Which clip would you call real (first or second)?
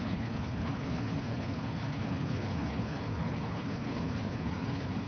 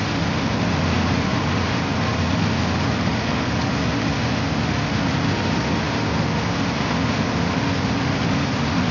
second